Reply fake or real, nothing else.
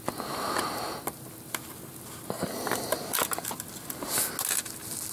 real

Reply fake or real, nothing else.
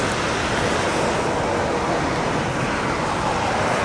real